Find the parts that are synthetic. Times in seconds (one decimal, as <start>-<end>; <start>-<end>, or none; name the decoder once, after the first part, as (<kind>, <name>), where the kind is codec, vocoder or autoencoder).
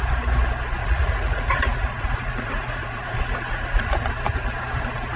0.8-3.9 (vocoder, Vocos)